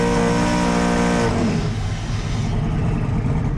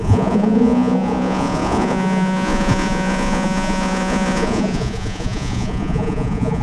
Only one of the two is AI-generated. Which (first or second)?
second